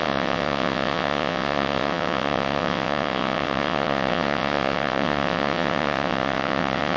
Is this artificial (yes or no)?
yes